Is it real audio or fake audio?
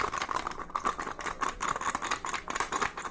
real